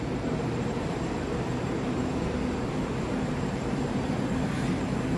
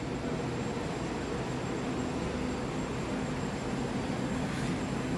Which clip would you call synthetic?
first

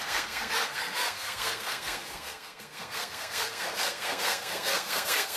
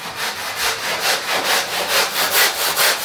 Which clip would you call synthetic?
first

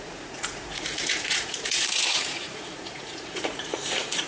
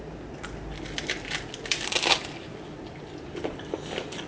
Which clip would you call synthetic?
first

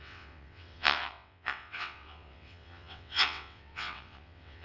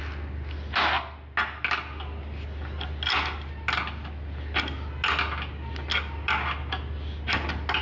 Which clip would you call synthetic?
first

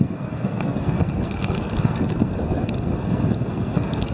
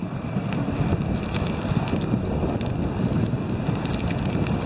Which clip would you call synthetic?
first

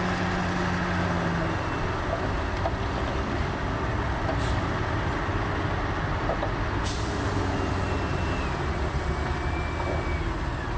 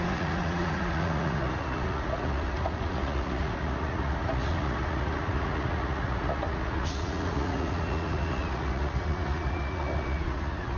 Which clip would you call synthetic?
second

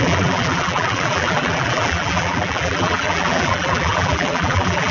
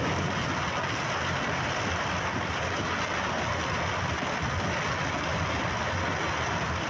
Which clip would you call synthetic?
first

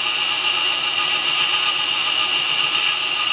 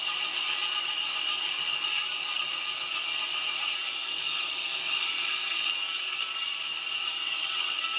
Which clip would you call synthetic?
second